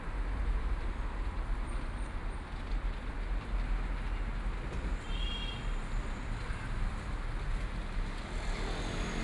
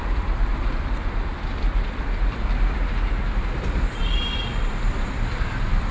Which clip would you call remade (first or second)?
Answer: second